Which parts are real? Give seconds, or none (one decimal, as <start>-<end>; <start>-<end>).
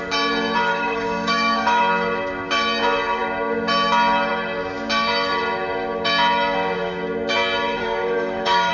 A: 0.0-0.7; 1.8-7.8